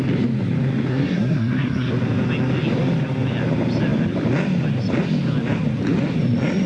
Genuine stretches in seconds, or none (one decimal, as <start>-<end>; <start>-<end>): 0.0-0.9; 1.9-6.7

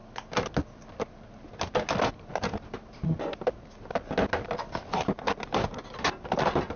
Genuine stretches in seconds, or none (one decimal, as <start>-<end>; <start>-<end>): 0.0-6.8

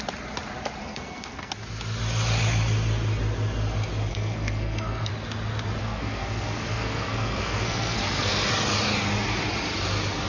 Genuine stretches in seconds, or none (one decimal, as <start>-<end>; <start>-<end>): 0.0-0.8; 1.5-4.1; 5.1-5.8; 8.5-10.3

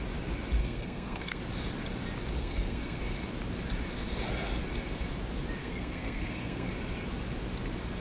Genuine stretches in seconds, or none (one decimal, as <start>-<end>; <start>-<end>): 0.0-0.6; 1.4-2.4; 3.0-5.6; 6.7-8.0